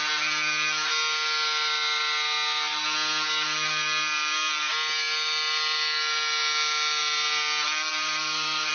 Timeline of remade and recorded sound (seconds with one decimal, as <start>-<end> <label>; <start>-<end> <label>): 0.0-7.9 recorded; 7.9-8.7 remade